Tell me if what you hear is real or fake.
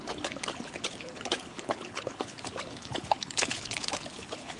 fake